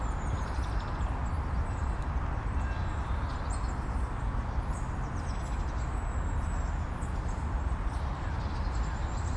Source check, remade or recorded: recorded